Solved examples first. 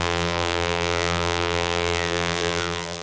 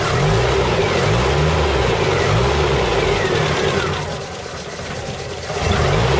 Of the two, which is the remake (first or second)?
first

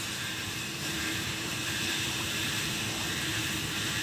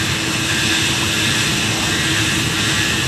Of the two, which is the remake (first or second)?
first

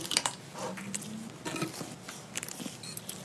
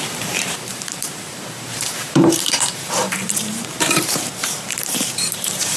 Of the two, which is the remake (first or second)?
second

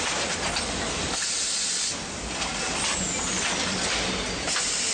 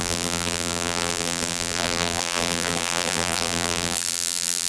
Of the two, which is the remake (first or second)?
second